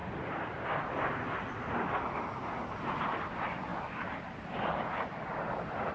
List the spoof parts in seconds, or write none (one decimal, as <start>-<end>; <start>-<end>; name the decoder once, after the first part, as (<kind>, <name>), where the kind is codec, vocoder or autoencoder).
none